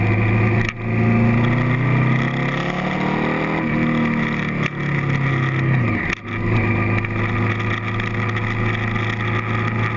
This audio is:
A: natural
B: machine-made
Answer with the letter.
A